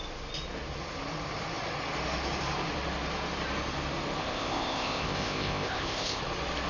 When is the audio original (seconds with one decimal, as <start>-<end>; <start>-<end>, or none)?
0.0-4.2; 6.2-6.7